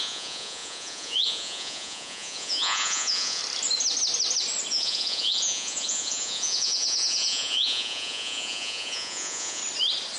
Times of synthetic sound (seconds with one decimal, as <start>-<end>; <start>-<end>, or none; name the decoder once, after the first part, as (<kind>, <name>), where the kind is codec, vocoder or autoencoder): 0.0-3.4 (vocoder, Vocos); 4.7-9.6